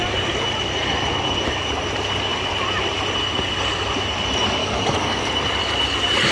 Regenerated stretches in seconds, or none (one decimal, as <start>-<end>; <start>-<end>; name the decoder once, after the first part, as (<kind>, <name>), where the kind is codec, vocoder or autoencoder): 4.6-5.3 (codec, DAC)

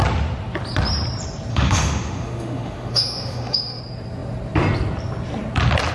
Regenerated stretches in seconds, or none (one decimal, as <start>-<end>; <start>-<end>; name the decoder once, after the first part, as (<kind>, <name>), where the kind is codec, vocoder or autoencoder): 1.5-3.8 (autoencoder, DAC-VAE)